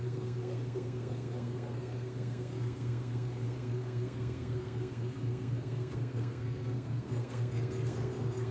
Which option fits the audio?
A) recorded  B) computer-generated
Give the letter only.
B